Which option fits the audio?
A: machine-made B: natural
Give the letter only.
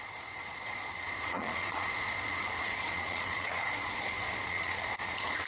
A